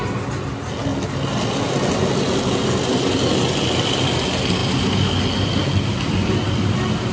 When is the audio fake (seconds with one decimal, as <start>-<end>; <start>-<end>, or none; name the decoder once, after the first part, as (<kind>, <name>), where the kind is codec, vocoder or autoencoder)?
none